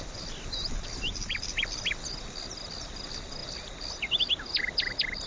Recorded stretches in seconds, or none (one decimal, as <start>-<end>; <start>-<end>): 0.0-5.3